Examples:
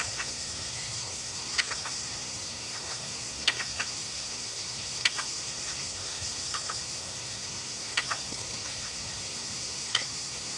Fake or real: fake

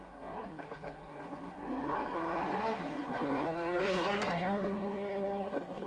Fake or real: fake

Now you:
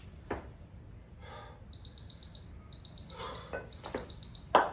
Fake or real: real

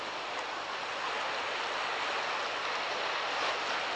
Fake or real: real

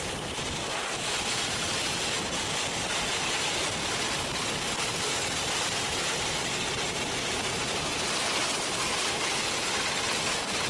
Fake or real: real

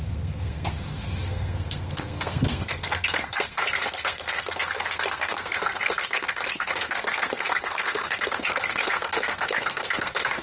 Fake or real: fake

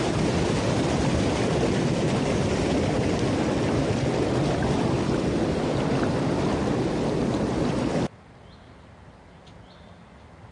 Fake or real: real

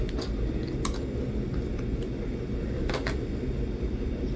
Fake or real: real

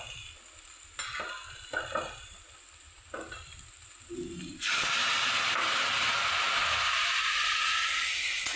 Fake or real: real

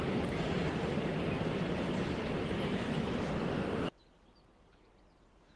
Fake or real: real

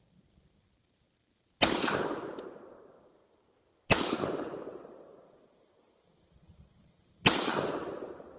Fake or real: real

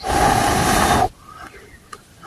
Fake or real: real